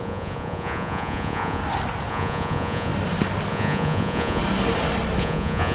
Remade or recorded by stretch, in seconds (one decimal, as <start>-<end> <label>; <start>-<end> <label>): 0.0-1.6 remade; 1.6-2.1 recorded; 2.1-2.9 remade; 2.9-3.5 recorded; 3.5-4.4 remade; 4.4-5.2 recorded; 5.2-5.7 remade